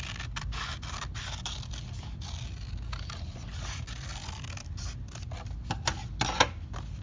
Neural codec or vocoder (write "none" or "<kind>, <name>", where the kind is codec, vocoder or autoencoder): none